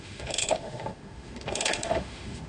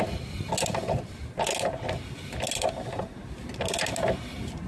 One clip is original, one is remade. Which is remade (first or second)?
first